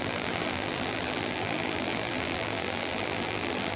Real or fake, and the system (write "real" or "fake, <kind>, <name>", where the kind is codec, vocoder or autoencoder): fake, vocoder, BigVGAN v2